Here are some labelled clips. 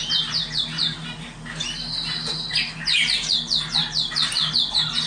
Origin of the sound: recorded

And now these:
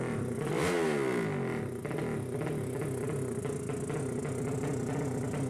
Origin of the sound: recorded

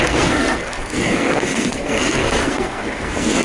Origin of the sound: remade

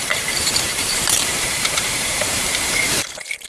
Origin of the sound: remade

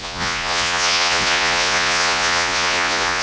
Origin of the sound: remade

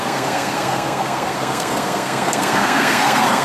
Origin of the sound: remade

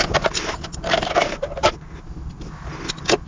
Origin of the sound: recorded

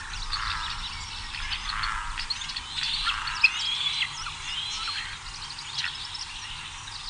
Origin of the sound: recorded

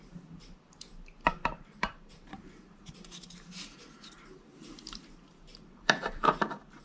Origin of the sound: remade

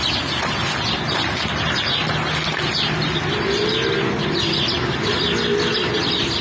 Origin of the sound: recorded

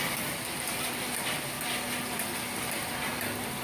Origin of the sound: recorded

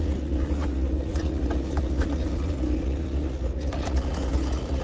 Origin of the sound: remade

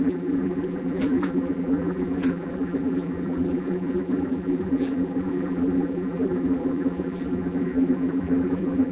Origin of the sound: remade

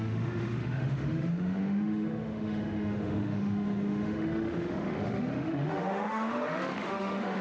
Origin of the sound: remade